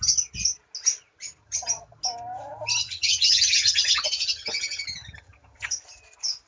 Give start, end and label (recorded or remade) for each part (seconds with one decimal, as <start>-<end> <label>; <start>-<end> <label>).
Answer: 0.0-1.4 recorded; 1.4-2.0 remade; 2.0-2.8 recorded; 2.8-5.7 remade; 5.7-6.5 recorded